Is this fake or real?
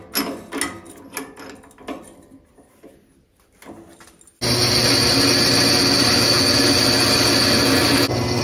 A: real